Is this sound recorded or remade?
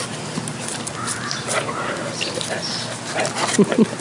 recorded